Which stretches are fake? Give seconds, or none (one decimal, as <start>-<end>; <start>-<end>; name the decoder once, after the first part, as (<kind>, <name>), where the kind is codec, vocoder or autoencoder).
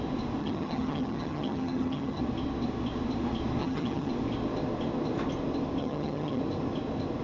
0.4-2.2 (vocoder, HiFi-GAN); 3.6-4.1; 5.8-6.4